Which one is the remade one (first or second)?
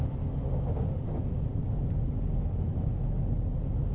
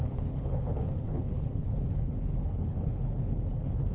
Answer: second